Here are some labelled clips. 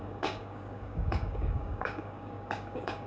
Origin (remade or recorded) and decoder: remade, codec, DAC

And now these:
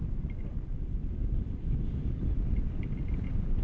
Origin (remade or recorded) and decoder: recorded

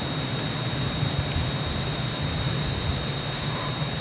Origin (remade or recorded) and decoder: recorded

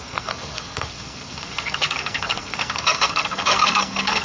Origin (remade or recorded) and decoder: remade, codec, SNAC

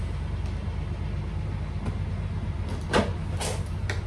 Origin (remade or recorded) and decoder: recorded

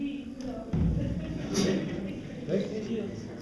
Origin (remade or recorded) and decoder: recorded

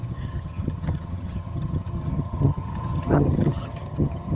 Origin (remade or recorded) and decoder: remade, vocoder, HiFi-GAN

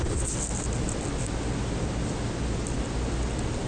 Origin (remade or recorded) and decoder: recorded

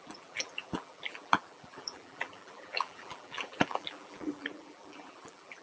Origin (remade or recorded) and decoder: remade, vocoder, BigVGAN v2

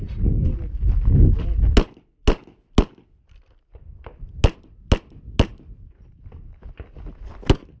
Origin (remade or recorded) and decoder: recorded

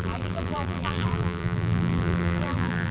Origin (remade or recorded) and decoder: remade, vocoder, BigVGAN v2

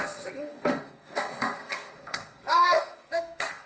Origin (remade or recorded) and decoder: remade, codec, SNAC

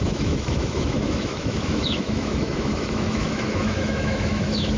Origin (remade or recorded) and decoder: remade, autoencoder, DAC-VAE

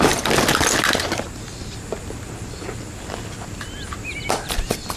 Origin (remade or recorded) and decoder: recorded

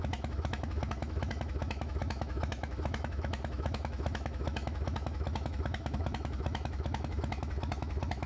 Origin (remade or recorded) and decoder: remade, autoencoder, DAC-VAE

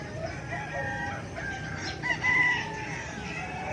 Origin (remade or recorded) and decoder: recorded